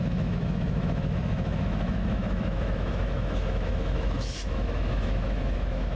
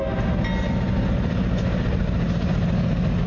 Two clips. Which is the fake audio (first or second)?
first